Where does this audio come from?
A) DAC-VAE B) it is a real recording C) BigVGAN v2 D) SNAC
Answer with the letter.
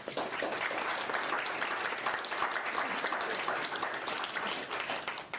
B